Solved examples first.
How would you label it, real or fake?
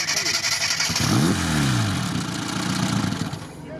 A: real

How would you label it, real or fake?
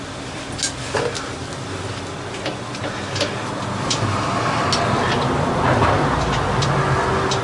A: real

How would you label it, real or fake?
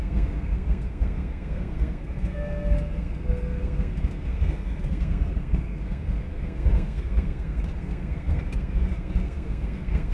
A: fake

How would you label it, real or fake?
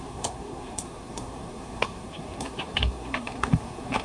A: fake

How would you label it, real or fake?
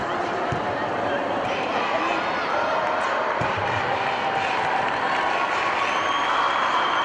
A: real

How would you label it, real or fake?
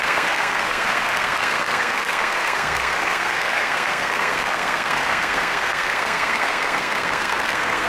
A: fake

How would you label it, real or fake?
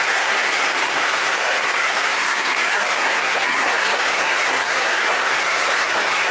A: fake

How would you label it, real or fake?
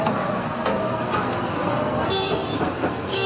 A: fake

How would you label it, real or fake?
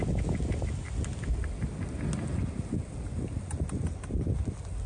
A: real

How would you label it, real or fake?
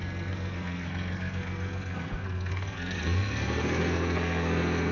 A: fake